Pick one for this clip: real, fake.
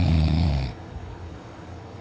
fake